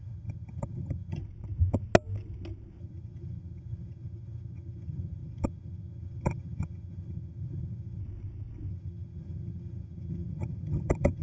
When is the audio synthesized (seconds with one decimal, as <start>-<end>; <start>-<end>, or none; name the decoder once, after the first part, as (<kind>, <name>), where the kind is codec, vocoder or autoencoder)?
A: 0.0-1.2 (vocoder, HiFi-GAN); 2.8-8.0; 8.7-11.2